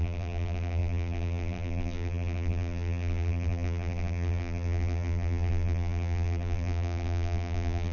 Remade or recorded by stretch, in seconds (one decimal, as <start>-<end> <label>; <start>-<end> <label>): 0.0-7.9 remade